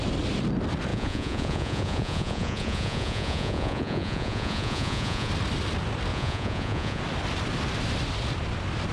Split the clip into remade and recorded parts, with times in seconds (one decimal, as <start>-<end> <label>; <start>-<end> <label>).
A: 0.0-0.9 recorded; 0.9-5.3 remade; 5.3-6.1 recorded; 6.1-7.0 remade; 7.0-8.9 recorded